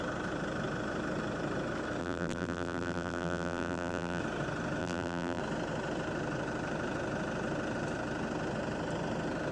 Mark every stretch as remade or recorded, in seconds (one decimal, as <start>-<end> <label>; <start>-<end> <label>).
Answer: 0.0-2.0 recorded; 2.0-4.2 remade; 4.2-4.8 recorded; 4.8-5.4 remade; 5.4-9.5 recorded